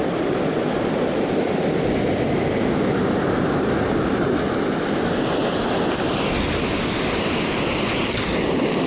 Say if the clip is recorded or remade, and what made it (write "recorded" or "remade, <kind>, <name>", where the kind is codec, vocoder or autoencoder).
recorded